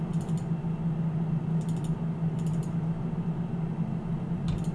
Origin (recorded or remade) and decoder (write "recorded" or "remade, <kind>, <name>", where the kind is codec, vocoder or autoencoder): recorded